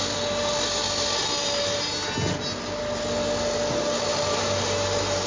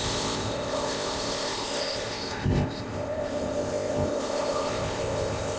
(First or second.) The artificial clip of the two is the second